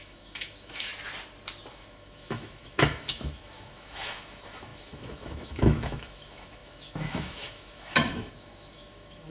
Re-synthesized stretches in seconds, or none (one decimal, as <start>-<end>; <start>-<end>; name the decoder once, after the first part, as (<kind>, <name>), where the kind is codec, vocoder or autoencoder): 0.0-0.9 (autoencoder, DAC-VAE); 1.7-9.3